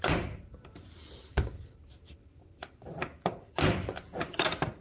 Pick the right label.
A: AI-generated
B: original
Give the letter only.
A